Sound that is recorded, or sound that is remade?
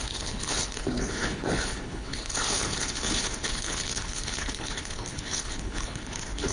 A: remade